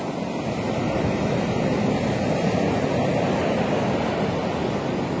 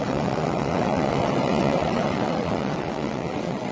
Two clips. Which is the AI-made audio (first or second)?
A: second